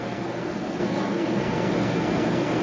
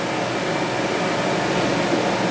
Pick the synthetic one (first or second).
first